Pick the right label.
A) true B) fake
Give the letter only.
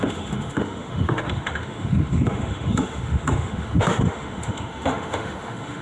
B